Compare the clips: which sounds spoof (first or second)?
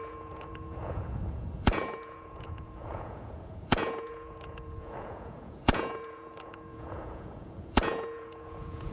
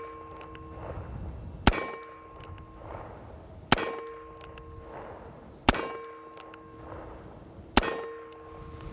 first